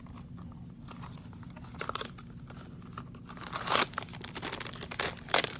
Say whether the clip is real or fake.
real